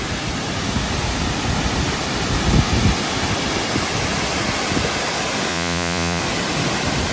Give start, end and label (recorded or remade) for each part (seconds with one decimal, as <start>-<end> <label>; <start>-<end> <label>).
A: 0.0-5.5 recorded; 5.5-6.2 remade; 6.2-7.1 recorded